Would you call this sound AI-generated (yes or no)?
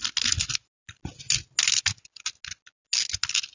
no